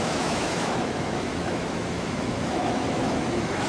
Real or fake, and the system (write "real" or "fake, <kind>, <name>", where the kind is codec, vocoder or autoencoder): fake, autoencoder, DAC-VAE